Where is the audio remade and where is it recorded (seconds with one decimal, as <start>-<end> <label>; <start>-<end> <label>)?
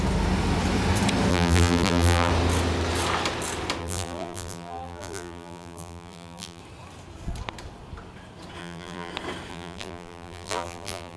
0.0-1.3 recorded; 1.3-2.3 remade; 2.3-3.8 recorded; 3.8-6.6 remade; 6.6-8.6 recorded; 8.6-9.1 remade; 9.1-9.5 recorded; 9.5-11.2 remade